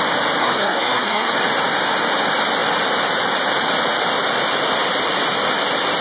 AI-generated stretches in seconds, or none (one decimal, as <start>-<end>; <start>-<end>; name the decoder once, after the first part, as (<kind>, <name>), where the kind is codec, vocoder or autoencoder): 0.4-1.3 (codec, SNAC)